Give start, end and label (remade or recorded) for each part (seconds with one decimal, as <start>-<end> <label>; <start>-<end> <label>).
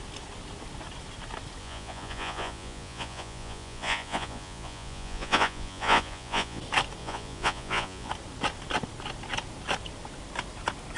0.0-1.6 recorded; 1.6-6.6 remade; 6.6-7.0 recorded; 7.0-8.1 remade; 8.1-11.0 recorded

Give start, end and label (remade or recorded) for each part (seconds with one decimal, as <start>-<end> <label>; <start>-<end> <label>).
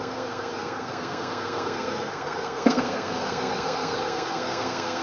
0.0-5.0 remade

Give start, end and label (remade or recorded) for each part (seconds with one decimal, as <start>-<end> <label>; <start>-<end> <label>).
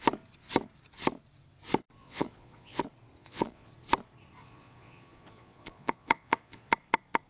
0.0-2.0 recorded; 2.0-2.8 remade; 2.8-3.2 recorded; 3.2-3.7 remade; 3.7-4.4 recorded; 4.4-6.7 remade; 6.7-7.3 recorded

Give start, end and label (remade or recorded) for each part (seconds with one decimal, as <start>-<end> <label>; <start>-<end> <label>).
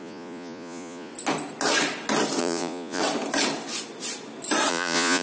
0.0-1.1 remade; 1.1-2.4 recorded; 2.4-3.0 remade; 3.0-4.7 recorded; 4.7-5.2 remade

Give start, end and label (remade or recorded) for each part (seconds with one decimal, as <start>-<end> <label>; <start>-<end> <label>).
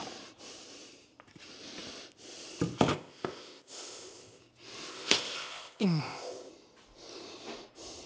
0.0-2.9 recorded; 2.9-4.4 remade; 4.4-4.9 recorded; 4.9-6.5 remade; 6.5-8.1 recorded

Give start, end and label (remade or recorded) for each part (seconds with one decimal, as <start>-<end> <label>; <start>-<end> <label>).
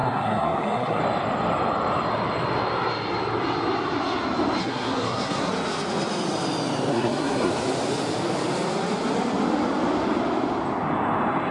0.0-1.0 remade; 1.0-4.6 recorded; 4.6-5.5 remade; 5.5-6.9 recorded; 6.9-7.5 remade; 7.5-11.5 recorded